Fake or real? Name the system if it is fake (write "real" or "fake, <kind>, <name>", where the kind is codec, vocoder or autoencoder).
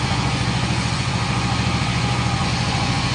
fake, vocoder, Vocos